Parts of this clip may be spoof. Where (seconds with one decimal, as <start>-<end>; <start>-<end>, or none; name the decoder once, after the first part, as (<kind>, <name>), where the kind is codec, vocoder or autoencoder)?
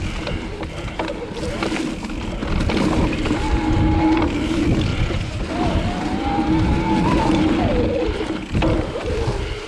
4.9-5.5 (vocoder, Vocos)